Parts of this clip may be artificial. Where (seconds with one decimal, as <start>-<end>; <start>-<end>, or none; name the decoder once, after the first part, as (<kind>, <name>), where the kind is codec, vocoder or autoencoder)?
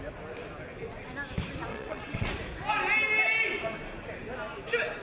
1.7-2.3 (vocoder, WaveNeXt)